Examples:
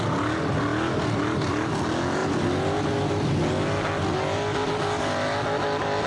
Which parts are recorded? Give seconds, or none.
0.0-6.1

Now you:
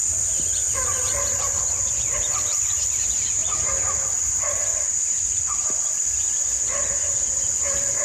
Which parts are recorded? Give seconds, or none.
0.0-8.0